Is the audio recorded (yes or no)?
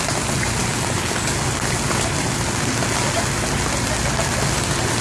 yes